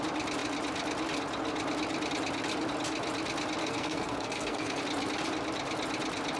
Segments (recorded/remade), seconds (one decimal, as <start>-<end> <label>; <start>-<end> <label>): 0.0-3.6 recorded; 3.6-4.8 remade; 4.8-6.4 recorded